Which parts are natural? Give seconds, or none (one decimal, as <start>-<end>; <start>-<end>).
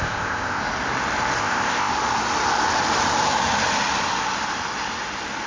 0.6-1.4; 1.9-5.5